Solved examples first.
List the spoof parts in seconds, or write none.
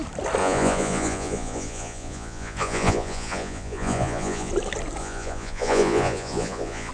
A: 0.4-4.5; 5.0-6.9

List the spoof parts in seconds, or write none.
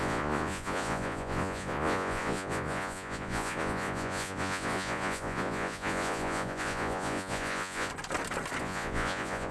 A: 0.0-7.9; 8.6-9.5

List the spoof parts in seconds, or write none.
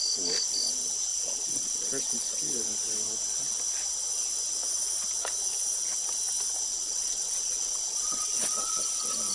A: 1.1-2.7; 6.7-8.8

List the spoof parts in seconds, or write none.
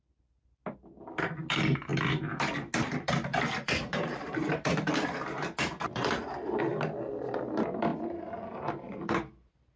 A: 3.3-4.5; 5.9-6.6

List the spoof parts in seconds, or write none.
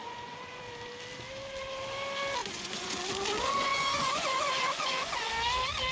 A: 0.0-0.6; 2.4-3.0; 3.7-5.3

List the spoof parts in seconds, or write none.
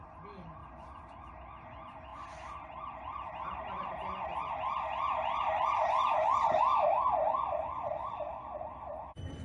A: none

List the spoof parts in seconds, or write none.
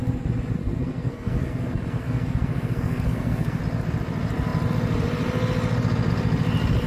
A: 0.6-3.6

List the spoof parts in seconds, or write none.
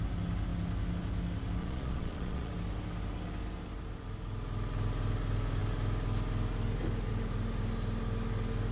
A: 1.6-2.5